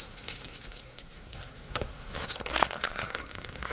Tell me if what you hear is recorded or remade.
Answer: remade